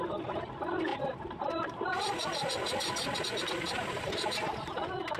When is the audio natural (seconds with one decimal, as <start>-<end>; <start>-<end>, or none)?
0.0-5.2